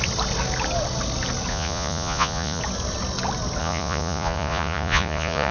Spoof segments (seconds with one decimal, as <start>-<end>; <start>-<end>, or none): 1.5-2.6; 3.6-5.5